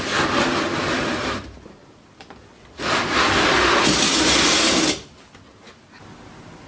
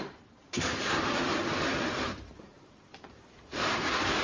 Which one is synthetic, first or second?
second